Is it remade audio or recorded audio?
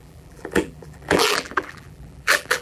remade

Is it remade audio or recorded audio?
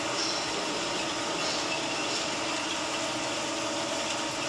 recorded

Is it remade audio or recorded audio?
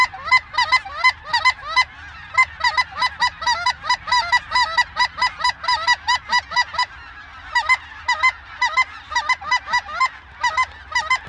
recorded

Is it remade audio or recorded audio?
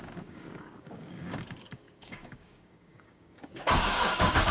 remade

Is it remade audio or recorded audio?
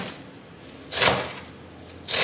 recorded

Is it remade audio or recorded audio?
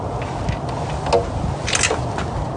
recorded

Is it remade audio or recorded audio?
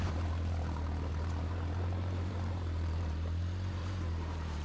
remade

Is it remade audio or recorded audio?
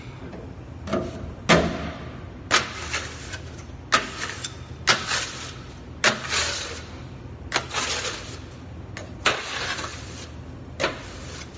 recorded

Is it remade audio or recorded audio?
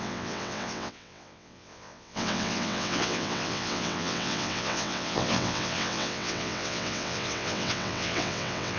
remade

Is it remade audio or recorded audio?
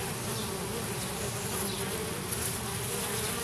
recorded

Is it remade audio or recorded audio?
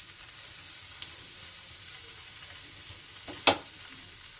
recorded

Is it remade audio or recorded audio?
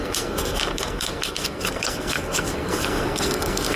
remade